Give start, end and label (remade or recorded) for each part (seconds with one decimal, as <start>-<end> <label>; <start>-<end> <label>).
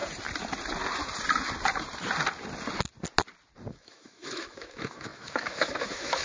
0.0-3.7 recorded; 3.7-6.2 remade